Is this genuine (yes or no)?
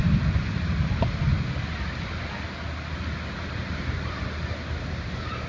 yes